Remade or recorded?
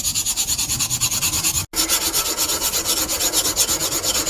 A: recorded